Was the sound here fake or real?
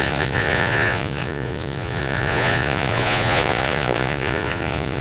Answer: fake